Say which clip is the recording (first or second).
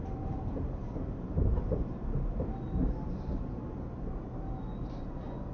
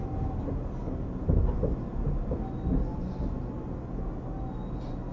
second